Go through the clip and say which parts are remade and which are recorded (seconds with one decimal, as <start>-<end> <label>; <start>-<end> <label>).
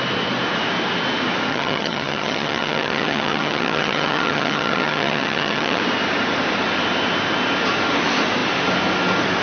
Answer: 0.0-1.5 recorded; 1.5-5.8 remade; 5.8-9.4 recorded